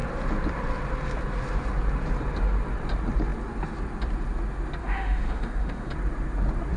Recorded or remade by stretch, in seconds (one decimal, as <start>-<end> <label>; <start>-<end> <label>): 0.0-4.8 recorded; 4.8-5.9 remade; 5.9-6.8 recorded

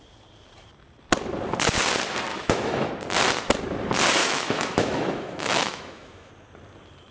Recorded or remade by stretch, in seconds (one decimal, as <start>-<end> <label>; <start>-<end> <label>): 0.0-2.3 recorded; 2.3-2.9 remade; 2.9-4.2 recorded; 4.2-6.3 remade; 6.3-7.1 recorded

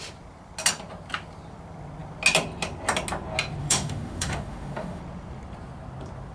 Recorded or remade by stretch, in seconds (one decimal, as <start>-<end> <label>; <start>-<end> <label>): 0.0-3.6 recorded; 3.6-5.0 remade; 5.0-6.3 recorded